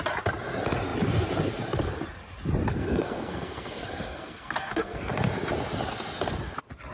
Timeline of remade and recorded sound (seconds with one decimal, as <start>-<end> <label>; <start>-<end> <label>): 0.0-2.7 recorded; 2.7-5.1 remade; 5.1-6.9 recorded